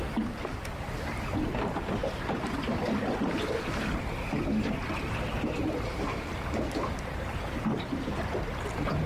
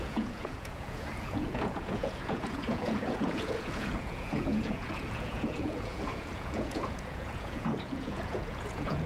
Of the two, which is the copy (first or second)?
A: second